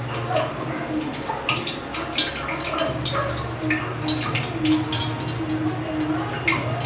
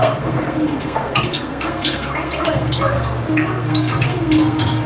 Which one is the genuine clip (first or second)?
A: first